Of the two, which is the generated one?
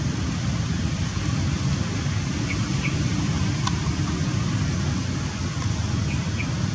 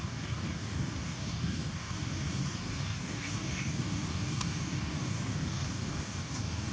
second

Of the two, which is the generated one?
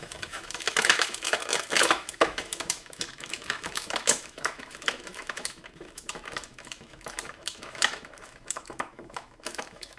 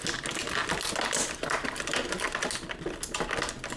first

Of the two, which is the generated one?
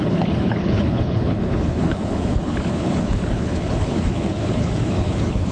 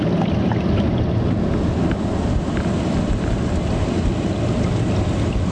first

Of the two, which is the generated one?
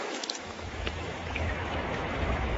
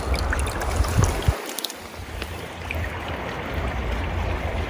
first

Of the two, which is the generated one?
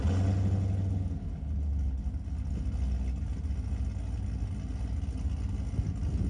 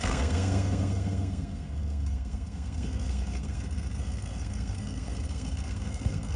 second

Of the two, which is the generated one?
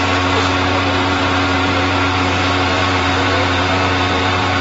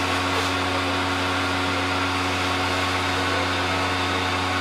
first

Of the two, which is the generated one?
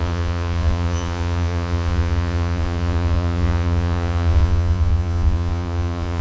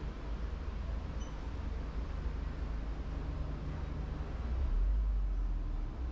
first